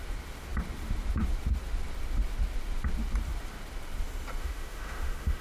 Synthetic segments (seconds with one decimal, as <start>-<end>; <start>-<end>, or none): 4.4-5.4